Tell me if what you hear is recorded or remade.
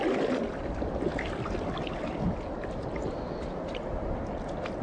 recorded